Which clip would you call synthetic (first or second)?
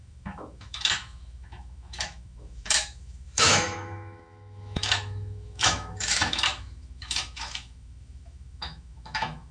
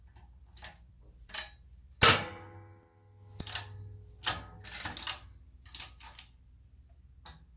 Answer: first